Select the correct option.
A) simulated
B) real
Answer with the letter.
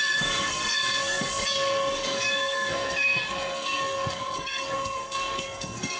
A